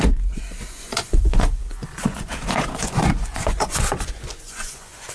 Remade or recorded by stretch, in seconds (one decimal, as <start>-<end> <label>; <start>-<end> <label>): 0.0-5.1 remade